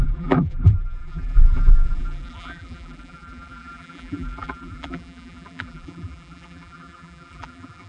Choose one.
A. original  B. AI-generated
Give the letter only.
B